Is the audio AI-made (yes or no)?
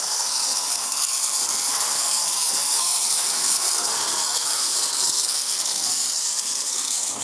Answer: yes